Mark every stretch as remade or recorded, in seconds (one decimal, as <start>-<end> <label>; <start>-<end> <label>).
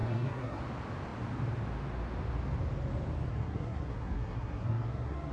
0.0-0.6 remade; 0.6-3.3 recorded; 3.3-5.3 remade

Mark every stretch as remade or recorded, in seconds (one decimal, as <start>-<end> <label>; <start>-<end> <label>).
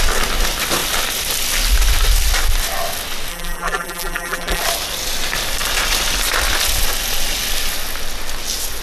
0.0-3.3 recorded; 3.3-4.6 remade; 4.6-8.8 recorded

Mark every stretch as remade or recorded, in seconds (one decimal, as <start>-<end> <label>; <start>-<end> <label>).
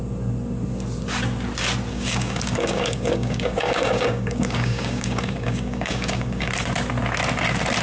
0.0-1.9 recorded; 1.9-6.5 remade; 6.5-7.8 recorded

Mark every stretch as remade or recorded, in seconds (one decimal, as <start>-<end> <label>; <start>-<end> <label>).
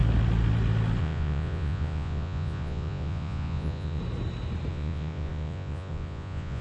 0.0-1.0 recorded; 1.0-4.0 remade; 4.0-4.7 recorded; 4.7-6.6 remade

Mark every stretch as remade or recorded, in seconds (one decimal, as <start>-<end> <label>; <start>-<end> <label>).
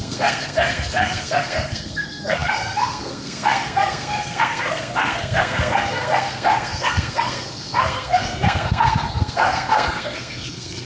0.0-10.8 remade